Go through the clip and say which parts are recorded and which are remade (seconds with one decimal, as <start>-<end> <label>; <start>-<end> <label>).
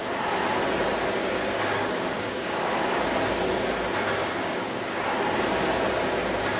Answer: 0.0-1.2 recorded; 1.2-3.0 remade; 3.0-4.2 recorded; 4.2-5.0 remade; 5.0-6.6 recorded